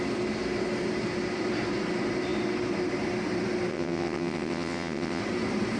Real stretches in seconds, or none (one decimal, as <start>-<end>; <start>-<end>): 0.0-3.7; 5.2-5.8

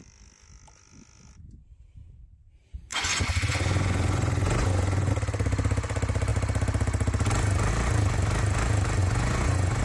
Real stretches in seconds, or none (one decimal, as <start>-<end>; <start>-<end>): 0.0-2.9; 5.1-9.0

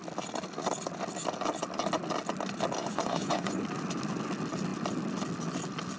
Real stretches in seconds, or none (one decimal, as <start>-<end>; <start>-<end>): 0.0-2.8; 3.6-6.0